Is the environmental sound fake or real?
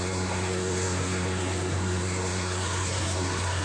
fake